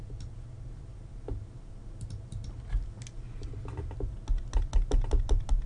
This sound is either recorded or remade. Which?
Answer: recorded